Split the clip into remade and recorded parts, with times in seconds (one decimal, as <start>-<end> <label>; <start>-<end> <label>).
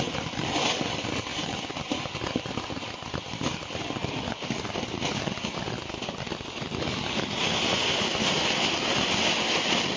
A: 0.0-10.0 recorded